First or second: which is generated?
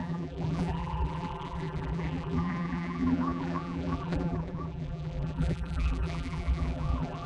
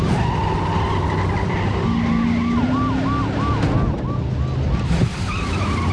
first